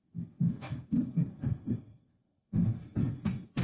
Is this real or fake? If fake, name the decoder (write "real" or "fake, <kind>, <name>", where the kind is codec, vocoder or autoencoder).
fake, codec, SNAC